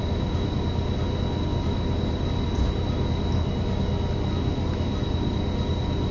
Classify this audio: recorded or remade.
recorded